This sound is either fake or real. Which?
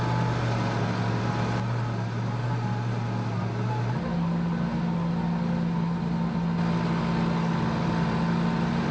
real